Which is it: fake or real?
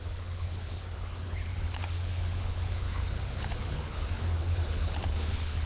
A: fake